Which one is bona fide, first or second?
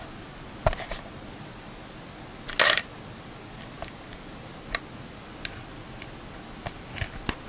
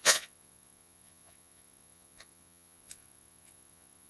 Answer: first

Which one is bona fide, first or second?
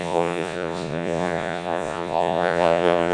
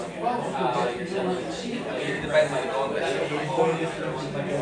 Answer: second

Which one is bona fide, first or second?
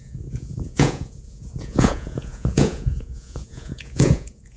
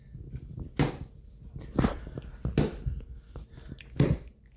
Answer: second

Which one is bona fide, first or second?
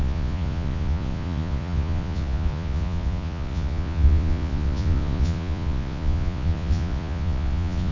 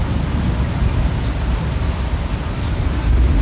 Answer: second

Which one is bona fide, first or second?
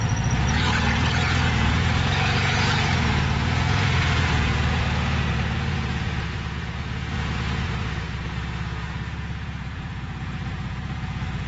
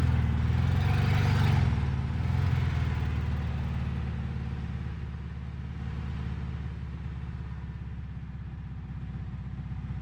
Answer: second